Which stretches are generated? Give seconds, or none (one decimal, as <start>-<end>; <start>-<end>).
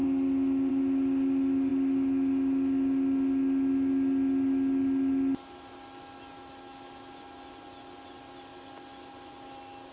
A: none